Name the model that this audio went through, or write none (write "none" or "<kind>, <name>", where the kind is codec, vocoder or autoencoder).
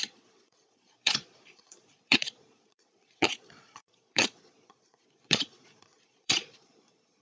vocoder, Vocos